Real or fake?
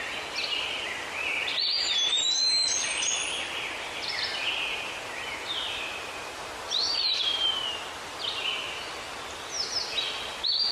real